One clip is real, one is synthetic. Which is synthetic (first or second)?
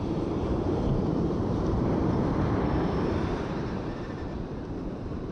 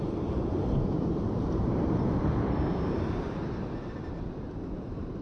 first